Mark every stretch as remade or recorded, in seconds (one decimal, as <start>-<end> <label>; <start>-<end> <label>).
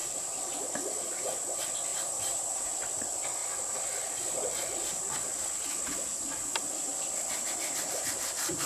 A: 0.0-1.9 recorded; 1.9-2.7 remade; 2.7-8.7 recorded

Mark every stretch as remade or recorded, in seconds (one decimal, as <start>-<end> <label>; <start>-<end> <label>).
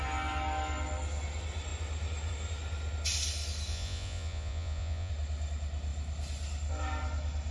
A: 0.0-3.7 recorded; 3.7-5.1 remade; 5.1-7.5 recorded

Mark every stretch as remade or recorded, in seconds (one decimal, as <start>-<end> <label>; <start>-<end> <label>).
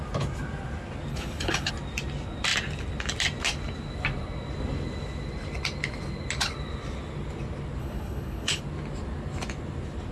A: 0.0-1.1 recorded; 1.1-1.7 remade; 1.7-7.8 recorded; 7.8-8.6 remade; 8.6-10.1 recorded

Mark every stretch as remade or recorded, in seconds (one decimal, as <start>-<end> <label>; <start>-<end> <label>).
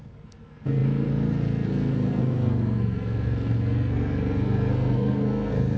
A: 0.0-5.8 remade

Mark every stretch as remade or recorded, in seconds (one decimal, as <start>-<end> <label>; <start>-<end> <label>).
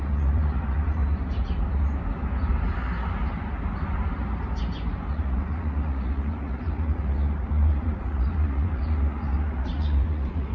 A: 0.0-1.0 remade; 1.0-5.1 recorded; 5.1-10.5 remade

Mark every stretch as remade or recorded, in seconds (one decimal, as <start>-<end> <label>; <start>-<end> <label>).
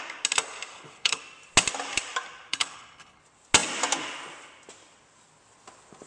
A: 0.0-0.7 recorded; 0.7-1.2 remade; 1.2-2.5 recorded; 2.5-3.2 remade; 3.2-6.1 recorded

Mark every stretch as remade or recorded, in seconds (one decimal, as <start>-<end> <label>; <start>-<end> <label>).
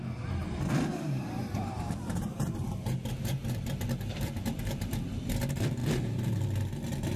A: 0.0-0.9 recorded; 0.9-5.2 remade; 5.2-5.8 recorded; 5.8-6.4 remade; 6.4-7.2 recorded